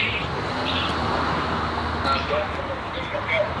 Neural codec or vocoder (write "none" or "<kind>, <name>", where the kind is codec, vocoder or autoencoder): none